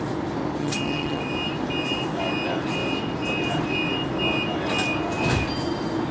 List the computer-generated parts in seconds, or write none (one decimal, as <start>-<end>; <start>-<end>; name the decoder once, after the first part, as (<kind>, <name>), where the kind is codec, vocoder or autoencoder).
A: 0.6-1.2 (vocoder, HiFi-GAN)